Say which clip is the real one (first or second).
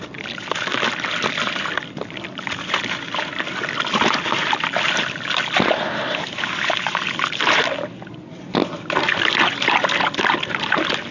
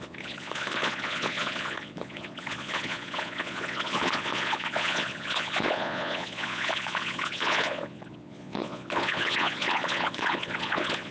first